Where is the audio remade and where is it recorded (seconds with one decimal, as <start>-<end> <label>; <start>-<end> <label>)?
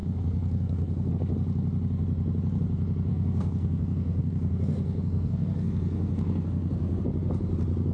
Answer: 0.0-1.1 remade; 1.1-3.1 recorded; 3.1-7.0 remade; 7.0-7.9 recorded